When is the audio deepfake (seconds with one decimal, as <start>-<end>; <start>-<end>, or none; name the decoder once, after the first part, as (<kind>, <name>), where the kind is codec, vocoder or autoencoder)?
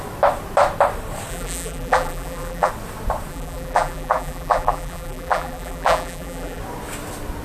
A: 1.3-2.7 (vocoder, BigVGAN v2); 3.3-6.6